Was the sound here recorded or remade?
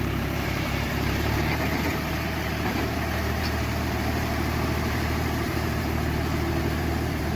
remade